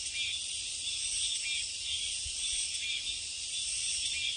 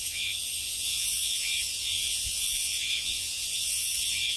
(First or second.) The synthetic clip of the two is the second